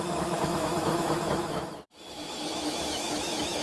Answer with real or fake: fake